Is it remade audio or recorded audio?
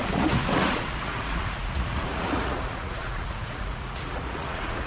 remade